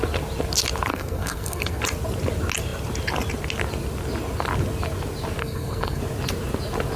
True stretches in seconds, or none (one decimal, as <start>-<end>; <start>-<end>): 0.0-0.9; 1.8-5.4; 6.0-7.0